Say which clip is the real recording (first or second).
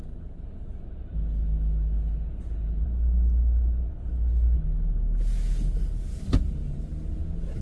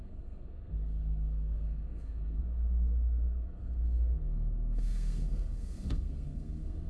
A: first